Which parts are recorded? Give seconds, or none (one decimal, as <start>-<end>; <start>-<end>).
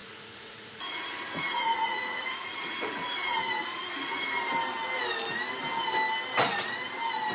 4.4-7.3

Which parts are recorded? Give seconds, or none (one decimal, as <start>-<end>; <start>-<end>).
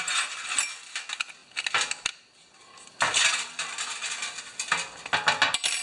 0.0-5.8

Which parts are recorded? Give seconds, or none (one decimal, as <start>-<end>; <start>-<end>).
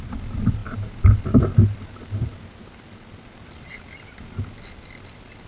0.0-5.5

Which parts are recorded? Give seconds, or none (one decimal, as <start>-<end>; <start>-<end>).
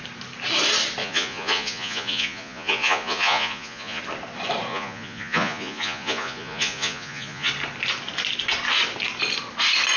0.0-1.0; 4.0-4.7; 7.5-10.0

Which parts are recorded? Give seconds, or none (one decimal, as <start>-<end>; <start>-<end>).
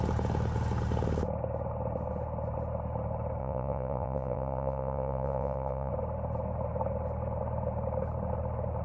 0.0-3.4; 5.9-8.8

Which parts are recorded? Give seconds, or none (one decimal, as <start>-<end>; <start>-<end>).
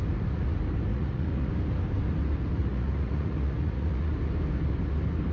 0.0-0.9; 1.5-2.6; 4.1-5.3